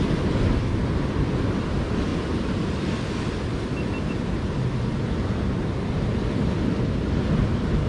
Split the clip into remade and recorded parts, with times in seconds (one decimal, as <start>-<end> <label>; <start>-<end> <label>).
0.0-7.9 recorded